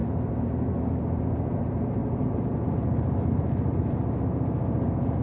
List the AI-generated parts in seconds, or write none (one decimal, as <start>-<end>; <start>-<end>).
none